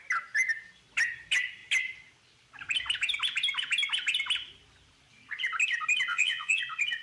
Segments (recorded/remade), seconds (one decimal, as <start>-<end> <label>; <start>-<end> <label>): 0.0-6.1 recorded; 6.1-6.6 remade; 6.6-7.0 recorded